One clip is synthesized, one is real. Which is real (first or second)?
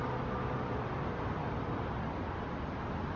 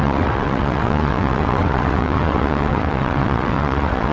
first